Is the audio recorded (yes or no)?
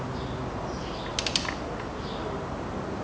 yes